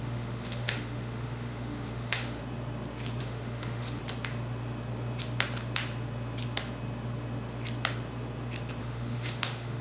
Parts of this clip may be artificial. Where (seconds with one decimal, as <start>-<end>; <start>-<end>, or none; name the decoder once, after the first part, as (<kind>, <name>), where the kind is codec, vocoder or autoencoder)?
0.0-2.4 (autoencoder, DAC-VAE); 3.2-4.0; 8.8-9.8